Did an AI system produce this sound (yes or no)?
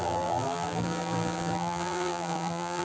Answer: yes